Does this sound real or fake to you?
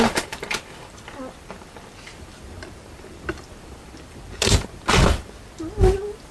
fake